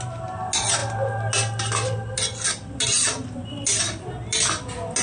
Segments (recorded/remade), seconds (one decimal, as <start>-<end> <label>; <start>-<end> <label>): 0.0-5.0 recorded